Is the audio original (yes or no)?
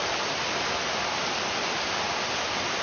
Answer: yes